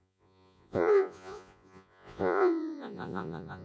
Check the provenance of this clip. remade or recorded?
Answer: remade